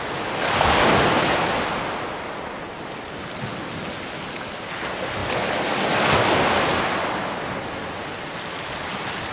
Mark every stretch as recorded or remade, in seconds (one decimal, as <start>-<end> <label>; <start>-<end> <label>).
0.0-9.3 recorded